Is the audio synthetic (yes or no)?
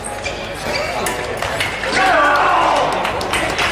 no